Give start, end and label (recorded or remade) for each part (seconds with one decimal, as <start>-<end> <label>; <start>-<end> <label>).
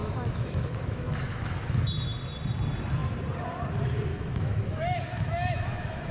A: 0.0-1.8 remade; 1.8-4.1 recorded; 4.1-6.1 remade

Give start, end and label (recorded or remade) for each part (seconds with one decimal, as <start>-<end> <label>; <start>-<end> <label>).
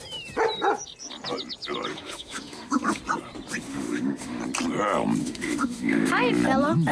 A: 0.0-1.9 recorded; 1.9-3.0 remade; 3.0-3.7 recorded; 3.7-4.4 remade; 4.4-5.2 recorded; 5.2-6.1 remade; 6.1-6.9 recorded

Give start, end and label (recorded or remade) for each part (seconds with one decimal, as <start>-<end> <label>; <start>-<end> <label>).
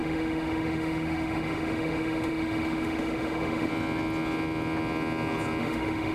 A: 0.0-3.7 remade; 3.7-5.6 recorded; 5.6-6.1 remade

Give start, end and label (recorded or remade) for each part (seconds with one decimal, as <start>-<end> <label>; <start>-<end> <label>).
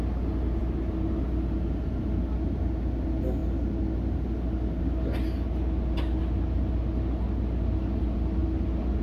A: 0.0-9.0 recorded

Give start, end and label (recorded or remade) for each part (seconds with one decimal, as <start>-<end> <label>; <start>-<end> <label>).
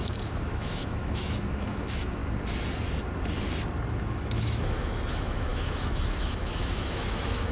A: 0.0-2.2 remade; 2.2-4.0 recorded; 4.0-7.5 remade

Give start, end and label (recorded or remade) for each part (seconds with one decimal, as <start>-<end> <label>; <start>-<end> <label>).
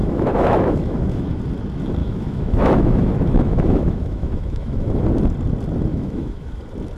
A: 0.0-1.4 remade; 1.4-2.0 recorded; 2.0-5.0 remade; 5.0-5.9 recorded; 5.9-6.6 remade; 6.6-7.0 recorded